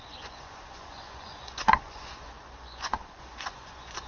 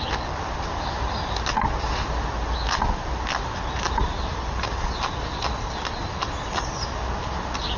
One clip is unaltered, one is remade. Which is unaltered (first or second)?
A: second